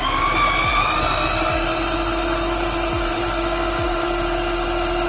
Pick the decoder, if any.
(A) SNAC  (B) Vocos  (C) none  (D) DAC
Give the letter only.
C